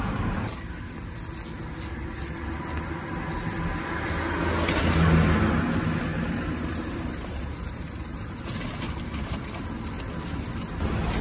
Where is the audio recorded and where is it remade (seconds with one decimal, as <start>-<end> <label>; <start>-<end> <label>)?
0.0-0.6 remade; 0.6-6.1 recorded; 6.1-9.5 remade; 9.5-11.2 recorded